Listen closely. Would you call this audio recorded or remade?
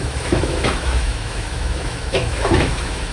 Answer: remade